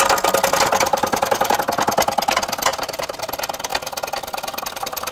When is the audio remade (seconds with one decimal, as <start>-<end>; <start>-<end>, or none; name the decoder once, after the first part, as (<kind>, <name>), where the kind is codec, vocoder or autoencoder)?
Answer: 0.9-1.6 (vocoder, BigVGAN v2); 2.7-3.2